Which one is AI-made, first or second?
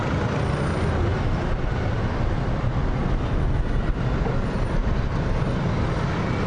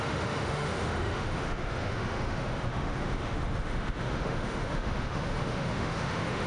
second